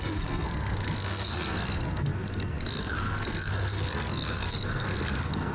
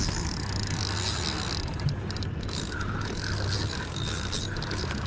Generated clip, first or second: first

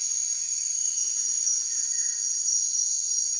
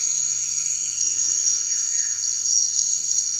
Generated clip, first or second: second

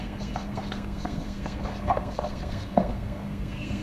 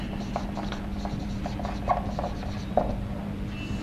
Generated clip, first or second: first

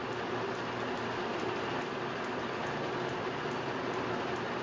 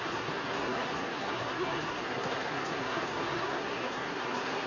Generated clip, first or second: second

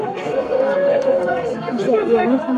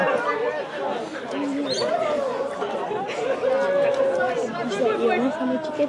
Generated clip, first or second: first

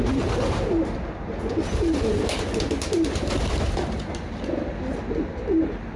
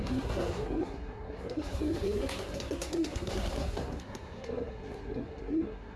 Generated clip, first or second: second